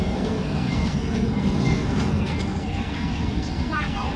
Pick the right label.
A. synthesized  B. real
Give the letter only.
A